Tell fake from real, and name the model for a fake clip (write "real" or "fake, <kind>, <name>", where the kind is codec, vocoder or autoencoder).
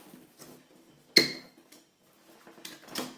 real